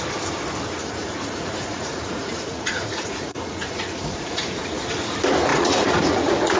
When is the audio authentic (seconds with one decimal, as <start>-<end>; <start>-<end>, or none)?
0.0-0.8; 4.8-5.5